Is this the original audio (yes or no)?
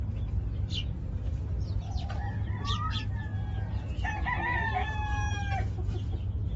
yes